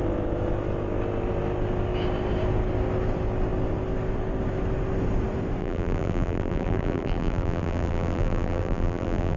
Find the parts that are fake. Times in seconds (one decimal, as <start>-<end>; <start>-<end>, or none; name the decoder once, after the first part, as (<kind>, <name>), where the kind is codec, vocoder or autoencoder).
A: 5.6-9.4 (vocoder, BigVGAN v2)